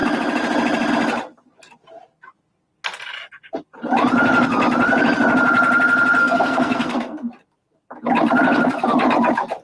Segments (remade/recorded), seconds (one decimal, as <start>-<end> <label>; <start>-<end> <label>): 0.0-6.2 recorded; 6.2-7.3 remade; 7.3-9.6 recorded